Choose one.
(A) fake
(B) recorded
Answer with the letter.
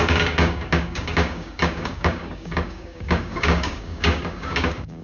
A